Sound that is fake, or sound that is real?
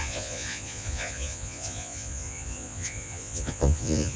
fake